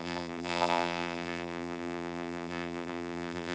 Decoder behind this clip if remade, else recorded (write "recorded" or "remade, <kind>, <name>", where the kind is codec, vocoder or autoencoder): remade, vocoder, BigVGAN v2